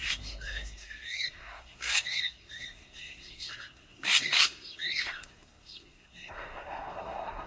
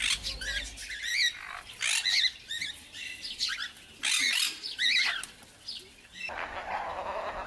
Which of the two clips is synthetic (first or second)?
first